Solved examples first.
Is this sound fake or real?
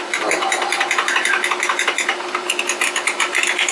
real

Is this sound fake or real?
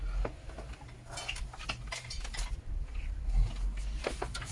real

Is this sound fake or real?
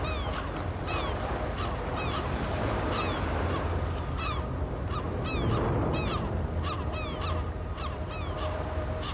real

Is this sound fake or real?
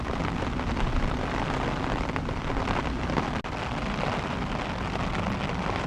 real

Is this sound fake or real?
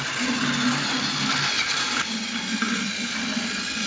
real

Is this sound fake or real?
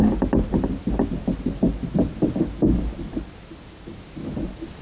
real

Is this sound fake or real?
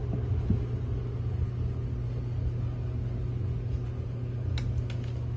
real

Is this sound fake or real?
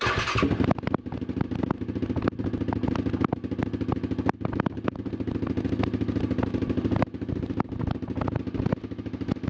real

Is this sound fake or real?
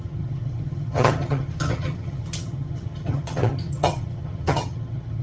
fake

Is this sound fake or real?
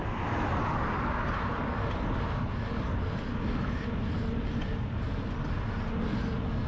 real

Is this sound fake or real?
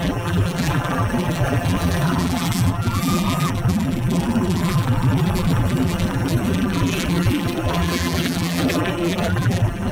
fake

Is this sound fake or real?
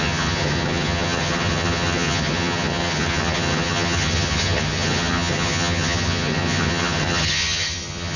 fake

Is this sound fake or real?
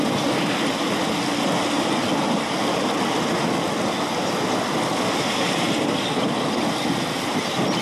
real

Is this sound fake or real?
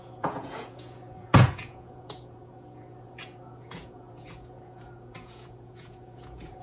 fake